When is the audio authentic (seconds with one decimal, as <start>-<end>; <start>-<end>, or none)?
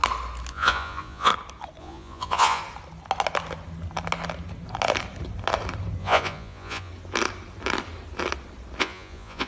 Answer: 0.0-0.5; 1.3-1.8; 2.6-6.0; 6.9-8.8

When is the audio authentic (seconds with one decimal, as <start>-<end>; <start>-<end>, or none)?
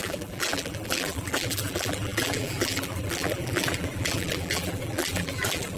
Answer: none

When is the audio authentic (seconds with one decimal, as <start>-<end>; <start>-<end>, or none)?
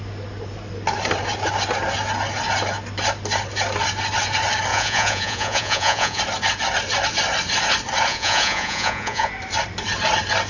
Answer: 0.0-4.7; 6.2-8.1; 9.3-10.5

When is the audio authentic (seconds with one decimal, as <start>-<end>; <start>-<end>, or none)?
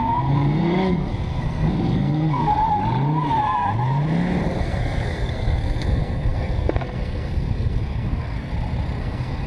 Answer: 2.5-4.6; 8.5-9.0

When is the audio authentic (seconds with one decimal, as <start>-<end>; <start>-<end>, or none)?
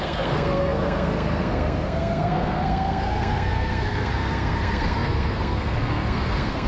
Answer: none